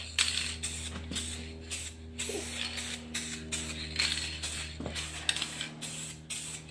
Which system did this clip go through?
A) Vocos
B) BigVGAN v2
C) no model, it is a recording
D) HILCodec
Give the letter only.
C